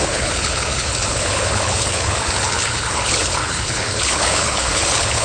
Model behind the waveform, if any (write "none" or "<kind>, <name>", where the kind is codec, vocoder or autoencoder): codec, HILCodec